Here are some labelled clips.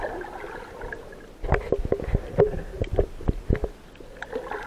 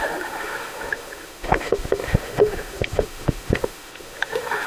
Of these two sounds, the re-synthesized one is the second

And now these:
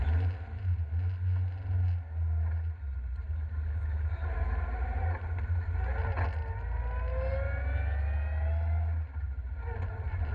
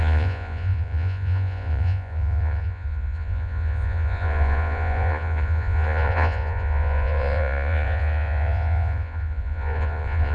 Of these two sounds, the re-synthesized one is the second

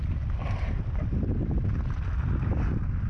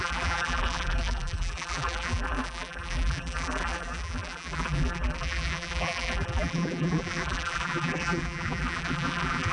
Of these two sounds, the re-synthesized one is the second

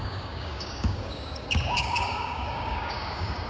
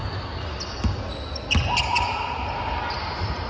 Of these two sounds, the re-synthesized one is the first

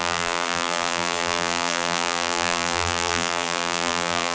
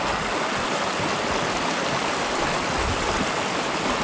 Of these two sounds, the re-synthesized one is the first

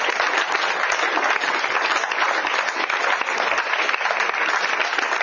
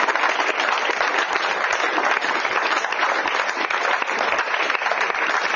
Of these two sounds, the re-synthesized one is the second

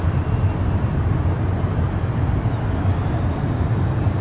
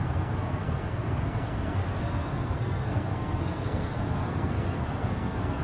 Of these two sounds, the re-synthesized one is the second